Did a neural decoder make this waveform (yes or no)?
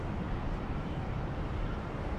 yes